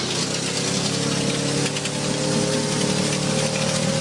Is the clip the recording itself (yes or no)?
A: yes